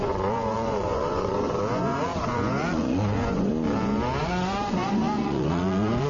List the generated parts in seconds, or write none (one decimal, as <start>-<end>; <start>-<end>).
0.0-3.5; 4.2-6.1